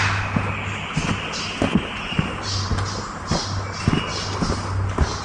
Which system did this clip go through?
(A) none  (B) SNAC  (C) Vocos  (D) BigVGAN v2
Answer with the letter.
A